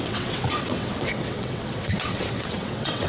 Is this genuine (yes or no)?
no